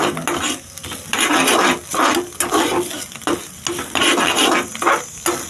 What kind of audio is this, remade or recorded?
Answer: recorded